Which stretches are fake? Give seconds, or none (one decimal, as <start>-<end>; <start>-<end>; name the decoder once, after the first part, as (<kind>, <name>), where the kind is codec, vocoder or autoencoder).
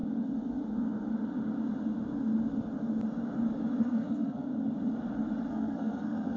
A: 3.8-4.5 (codec, SNAC); 5.5-6.4